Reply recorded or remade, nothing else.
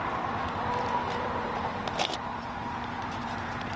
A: remade